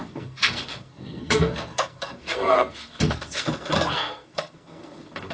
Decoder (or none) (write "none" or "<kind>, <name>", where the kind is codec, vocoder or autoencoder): codec, SNAC